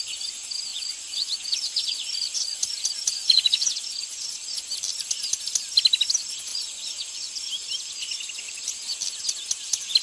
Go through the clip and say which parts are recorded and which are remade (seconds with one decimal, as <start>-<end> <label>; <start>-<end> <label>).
0.0-0.7 recorded; 0.7-4.7 remade; 4.7-6.5 recorded; 6.5-7.3 remade; 7.3-10.0 recorded